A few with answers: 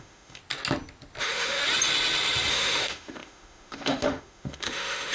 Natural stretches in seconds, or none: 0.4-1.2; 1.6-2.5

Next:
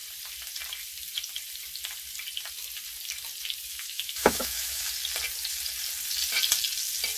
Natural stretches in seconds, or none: 0.0-3.7; 4.9-7.2

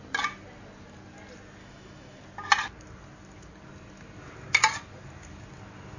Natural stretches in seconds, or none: 0.0-1.6; 2.2-6.0

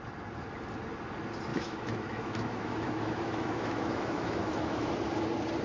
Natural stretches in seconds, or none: 0.0-1.5; 4.9-5.6

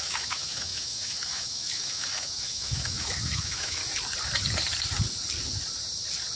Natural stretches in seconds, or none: 3.8-6.4

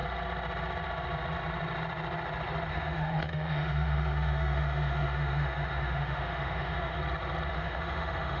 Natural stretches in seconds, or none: 0.0-2.7; 7.0-7.5